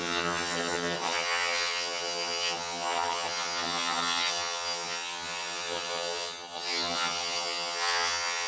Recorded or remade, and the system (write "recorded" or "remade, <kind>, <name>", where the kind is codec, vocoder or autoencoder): remade, vocoder, HiFi-GAN